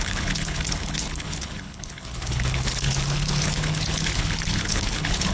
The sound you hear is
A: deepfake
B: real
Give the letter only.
A